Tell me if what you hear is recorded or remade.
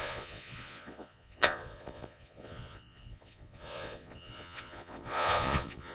remade